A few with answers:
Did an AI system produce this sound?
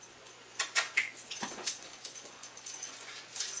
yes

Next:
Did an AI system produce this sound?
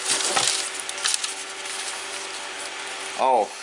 no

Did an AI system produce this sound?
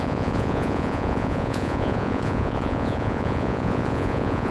yes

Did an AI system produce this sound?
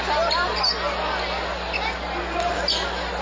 no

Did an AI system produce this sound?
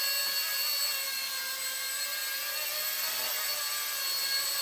no